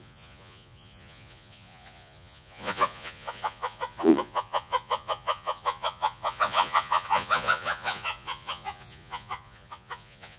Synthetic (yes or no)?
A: yes